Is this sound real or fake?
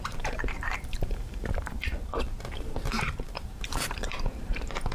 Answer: fake